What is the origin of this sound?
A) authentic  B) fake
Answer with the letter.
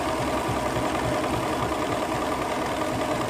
A